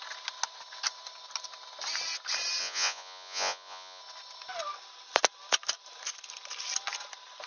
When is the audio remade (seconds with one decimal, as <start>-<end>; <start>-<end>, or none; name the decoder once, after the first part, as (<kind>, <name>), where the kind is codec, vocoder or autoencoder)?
2.6-4.0 (vocoder, Vocos)